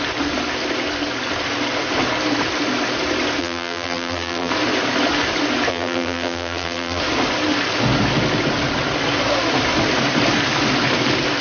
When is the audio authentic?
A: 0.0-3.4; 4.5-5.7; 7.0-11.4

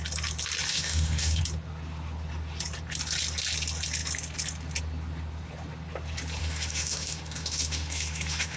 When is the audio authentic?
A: 0.0-0.7; 1.4-6.4

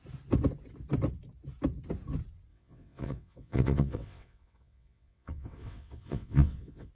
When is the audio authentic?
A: 0.0-2.5

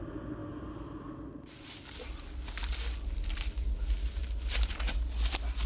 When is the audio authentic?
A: 0.0-5.7

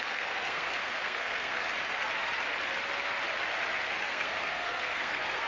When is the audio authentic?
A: 1.6-4.0

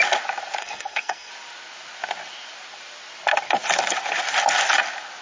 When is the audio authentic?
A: 0.0-0.6; 1.3-5.2